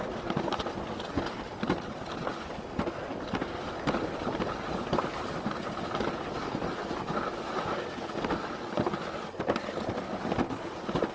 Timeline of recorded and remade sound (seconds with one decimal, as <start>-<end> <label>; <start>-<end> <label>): 0.0-11.1 recorded